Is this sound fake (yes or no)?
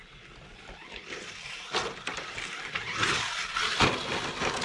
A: no